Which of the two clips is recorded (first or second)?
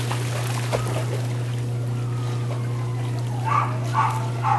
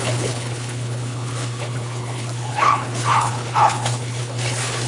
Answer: first